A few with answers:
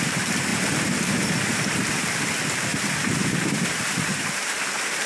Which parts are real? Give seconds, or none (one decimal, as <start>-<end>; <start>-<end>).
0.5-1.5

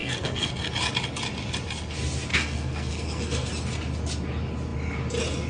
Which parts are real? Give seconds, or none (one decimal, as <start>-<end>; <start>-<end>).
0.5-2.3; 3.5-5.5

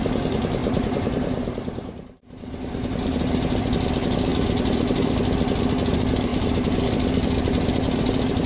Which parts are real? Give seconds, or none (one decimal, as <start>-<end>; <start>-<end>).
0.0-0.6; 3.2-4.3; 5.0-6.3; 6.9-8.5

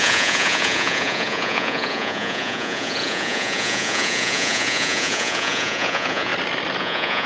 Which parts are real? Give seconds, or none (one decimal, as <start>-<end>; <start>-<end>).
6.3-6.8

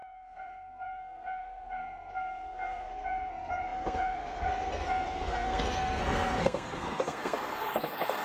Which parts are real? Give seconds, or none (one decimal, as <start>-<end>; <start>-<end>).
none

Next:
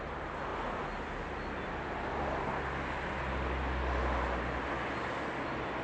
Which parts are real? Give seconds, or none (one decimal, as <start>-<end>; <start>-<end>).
0.0-5.8

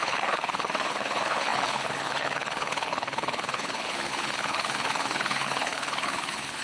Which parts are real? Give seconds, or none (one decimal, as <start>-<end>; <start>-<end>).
none